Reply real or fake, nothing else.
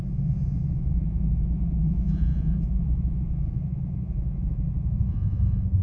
fake